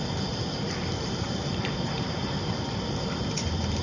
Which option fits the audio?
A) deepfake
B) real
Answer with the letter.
A